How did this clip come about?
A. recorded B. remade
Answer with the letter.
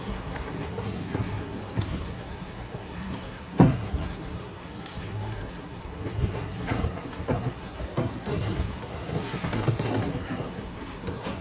B